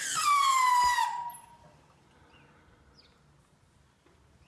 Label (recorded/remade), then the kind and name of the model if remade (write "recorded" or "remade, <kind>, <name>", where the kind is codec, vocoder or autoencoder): recorded